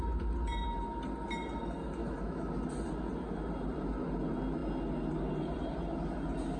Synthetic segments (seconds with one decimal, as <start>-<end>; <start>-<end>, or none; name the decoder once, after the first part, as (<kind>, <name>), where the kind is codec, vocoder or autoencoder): 2.0-2.5 (autoencoder, DAC-VAE)